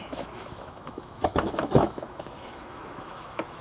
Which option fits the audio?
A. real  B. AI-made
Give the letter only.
B